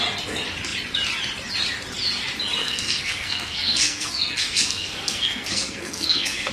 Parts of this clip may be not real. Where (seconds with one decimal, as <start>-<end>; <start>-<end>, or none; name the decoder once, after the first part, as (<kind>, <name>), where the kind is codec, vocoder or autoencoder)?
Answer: 2.6-6.5 (codec, SNAC)